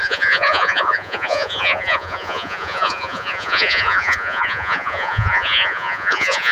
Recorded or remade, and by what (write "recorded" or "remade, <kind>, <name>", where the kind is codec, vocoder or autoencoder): remade, vocoder, Vocos